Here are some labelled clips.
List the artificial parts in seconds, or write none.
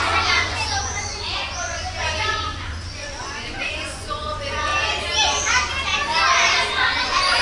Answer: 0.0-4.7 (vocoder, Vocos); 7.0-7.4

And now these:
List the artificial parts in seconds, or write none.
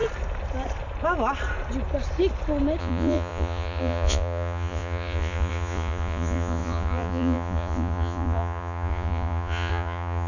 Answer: 2.8-10.3 (vocoder, Vocos)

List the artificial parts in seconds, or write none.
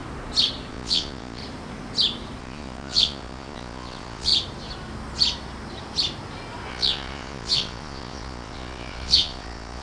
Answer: 0.7-1.4 (vocoder, Vocos); 2.4-4.3; 6.7-9.8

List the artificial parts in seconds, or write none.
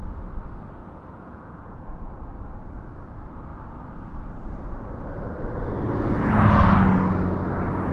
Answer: 0.8-2.2 (vocoder, Vocos)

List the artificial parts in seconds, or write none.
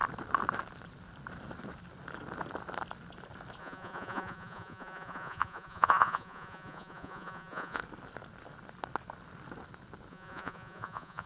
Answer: 3.6-7.8 (vocoder, Vocos); 10.1-11.3